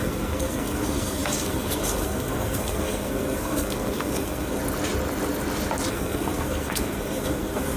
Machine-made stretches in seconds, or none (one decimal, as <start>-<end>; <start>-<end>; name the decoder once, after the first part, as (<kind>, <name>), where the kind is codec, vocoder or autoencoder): 0.0-4.6 (codec, SNAC); 5.9-7.8